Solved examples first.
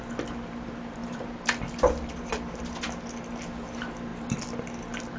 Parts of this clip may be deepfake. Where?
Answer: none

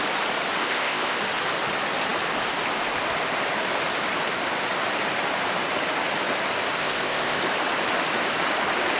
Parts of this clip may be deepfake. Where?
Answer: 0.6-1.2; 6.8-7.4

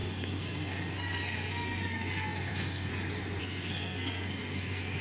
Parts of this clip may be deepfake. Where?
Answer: 0.0-2.9; 3.4-5.0

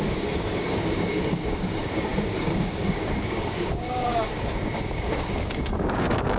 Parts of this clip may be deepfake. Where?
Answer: 0.0-6.4